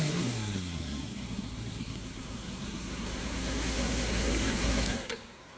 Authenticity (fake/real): fake